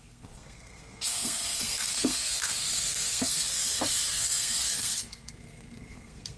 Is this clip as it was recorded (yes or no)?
no